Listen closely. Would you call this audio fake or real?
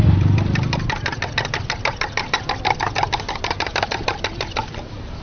fake